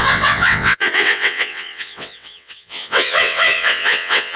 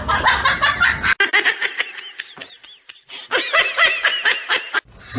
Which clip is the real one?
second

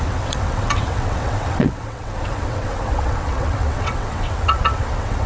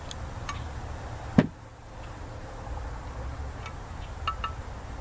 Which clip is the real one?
second